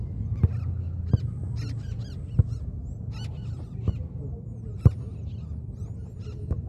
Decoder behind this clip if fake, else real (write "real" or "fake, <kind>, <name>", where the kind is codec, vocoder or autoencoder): real